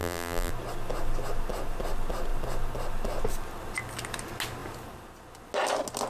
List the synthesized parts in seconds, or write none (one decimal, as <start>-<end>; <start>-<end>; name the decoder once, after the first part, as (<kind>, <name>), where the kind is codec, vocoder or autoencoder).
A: 0.0-0.5 (vocoder, BigVGAN v2)